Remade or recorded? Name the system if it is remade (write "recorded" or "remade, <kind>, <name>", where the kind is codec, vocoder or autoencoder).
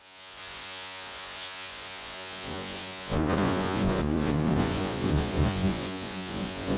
remade, vocoder, Vocos